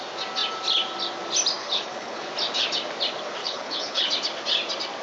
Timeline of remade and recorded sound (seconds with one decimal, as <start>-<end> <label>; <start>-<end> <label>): 0.0-1.6 recorded; 1.6-2.3 remade; 2.3-3.4 recorded; 3.4-4.1 remade; 4.1-5.0 recorded